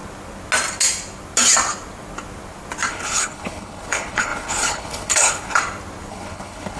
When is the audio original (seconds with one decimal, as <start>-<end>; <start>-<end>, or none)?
0.0-2.9; 5.6-6.1